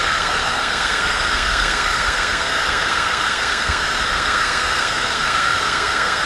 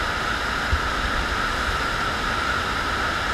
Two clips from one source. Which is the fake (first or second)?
first